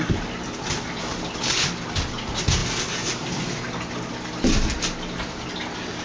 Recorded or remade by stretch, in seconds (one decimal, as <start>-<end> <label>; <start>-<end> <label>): 0.0-6.0 recorded